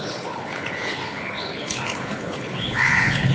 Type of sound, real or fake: fake